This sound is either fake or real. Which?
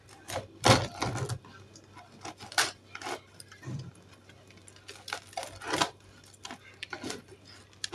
real